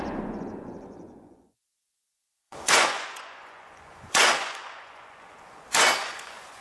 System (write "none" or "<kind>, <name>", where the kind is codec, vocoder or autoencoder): vocoder, Vocos